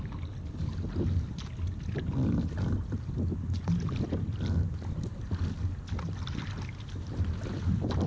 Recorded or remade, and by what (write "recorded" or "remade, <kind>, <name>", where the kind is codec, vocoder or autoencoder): recorded